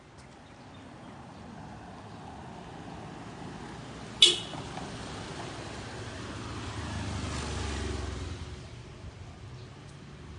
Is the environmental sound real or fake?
real